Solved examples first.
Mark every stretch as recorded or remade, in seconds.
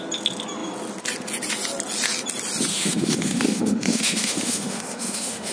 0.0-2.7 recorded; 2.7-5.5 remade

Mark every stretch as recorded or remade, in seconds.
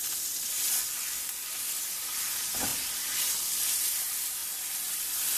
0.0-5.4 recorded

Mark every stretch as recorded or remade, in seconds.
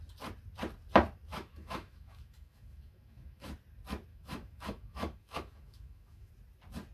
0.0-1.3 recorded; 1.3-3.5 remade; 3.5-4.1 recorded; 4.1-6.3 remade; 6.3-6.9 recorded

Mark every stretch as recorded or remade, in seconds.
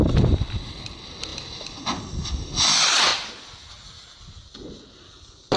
0.0-5.6 recorded